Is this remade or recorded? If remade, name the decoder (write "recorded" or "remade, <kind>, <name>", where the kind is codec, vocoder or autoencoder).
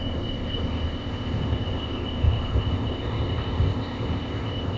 remade, codec, ZipCodec